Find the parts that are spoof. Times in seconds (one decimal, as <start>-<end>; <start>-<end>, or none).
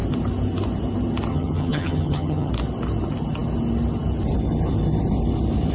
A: 1.3-2.5